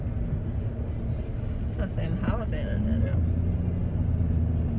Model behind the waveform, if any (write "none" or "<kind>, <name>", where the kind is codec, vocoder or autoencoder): none